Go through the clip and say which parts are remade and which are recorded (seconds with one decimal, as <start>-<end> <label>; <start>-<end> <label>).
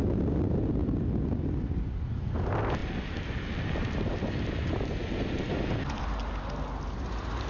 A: 0.0-0.8 recorded; 0.8-1.9 remade; 1.9-2.8 recorded; 2.8-4.7 remade; 4.7-7.5 recorded